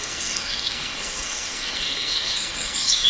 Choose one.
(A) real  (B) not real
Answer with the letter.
B